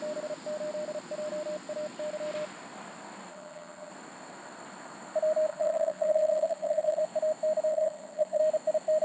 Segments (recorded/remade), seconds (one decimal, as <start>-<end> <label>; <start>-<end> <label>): 0.0-3.3 recorded; 3.3-3.9 remade; 3.9-5.5 recorded; 5.5-7.0 remade; 7.0-7.7 recorded; 7.7-8.4 remade; 8.4-9.0 recorded